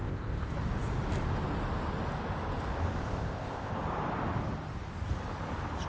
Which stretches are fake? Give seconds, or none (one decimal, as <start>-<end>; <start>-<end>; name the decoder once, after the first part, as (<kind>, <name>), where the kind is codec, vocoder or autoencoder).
0.0-0.5 (codec, ZipCodec); 3.0-3.7